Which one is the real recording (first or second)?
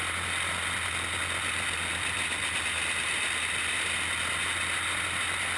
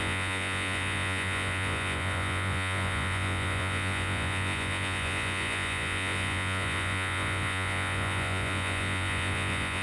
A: first